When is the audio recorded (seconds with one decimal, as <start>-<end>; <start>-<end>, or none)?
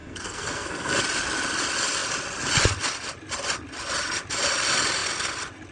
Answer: 1.0-5.7